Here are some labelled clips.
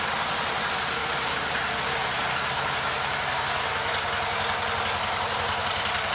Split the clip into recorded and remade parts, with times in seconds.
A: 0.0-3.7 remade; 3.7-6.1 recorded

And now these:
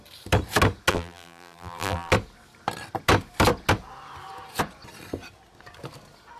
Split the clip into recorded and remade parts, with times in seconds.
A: 0.0-0.9 recorded; 0.9-2.1 remade; 2.1-6.4 recorded